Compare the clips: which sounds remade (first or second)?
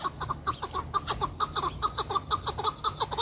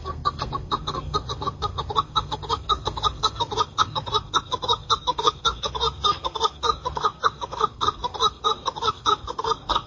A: second